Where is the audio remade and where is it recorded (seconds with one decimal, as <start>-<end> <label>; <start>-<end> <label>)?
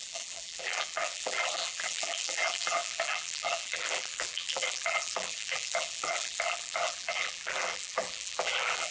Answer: 0.0-8.9 remade